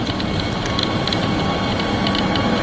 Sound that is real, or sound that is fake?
real